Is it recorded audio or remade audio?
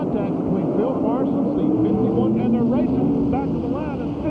recorded